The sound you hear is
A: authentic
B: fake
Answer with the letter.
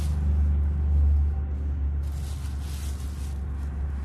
A